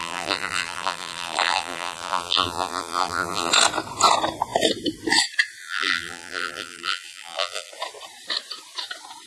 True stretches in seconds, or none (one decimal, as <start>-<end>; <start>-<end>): 3.5-5.6; 7.7-9.3